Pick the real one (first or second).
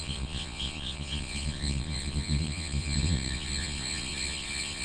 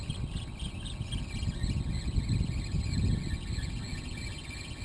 second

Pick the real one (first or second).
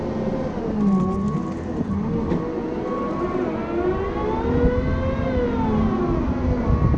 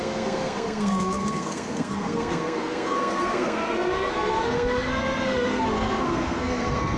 first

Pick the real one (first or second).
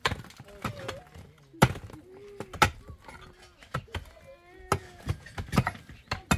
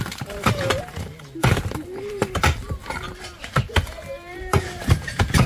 first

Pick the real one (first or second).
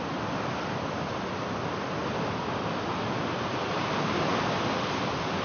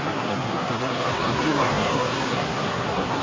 first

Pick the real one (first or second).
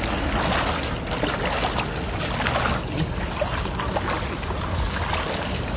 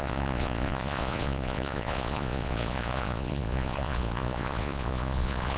first